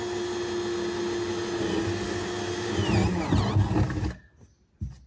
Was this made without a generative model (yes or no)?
yes